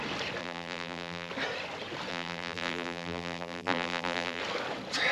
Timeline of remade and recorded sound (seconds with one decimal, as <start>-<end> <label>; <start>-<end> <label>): 0.0-0.4 recorded; 0.4-1.3 remade; 1.3-2.1 recorded; 2.1-4.4 remade; 4.4-5.1 recorded